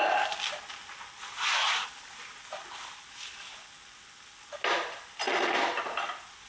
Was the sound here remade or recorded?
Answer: recorded